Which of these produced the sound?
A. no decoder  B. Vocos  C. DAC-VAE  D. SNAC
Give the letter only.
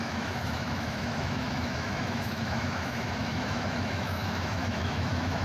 C